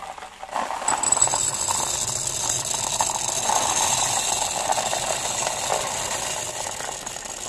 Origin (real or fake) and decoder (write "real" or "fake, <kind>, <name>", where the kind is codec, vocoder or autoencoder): real